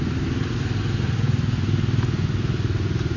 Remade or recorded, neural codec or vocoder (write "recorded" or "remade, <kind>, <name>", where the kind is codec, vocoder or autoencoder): recorded